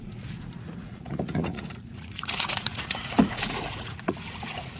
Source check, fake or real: fake